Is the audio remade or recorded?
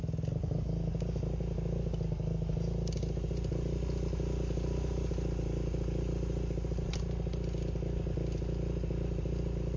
recorded